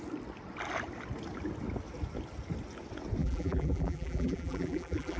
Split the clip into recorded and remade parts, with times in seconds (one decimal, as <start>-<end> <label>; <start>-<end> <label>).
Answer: 0.0-3.2 recorded; 3.2-5.2 remade